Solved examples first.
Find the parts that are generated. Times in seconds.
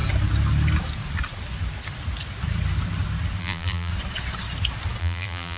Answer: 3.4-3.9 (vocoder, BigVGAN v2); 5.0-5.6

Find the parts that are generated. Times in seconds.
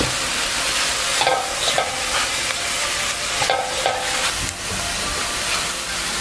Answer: none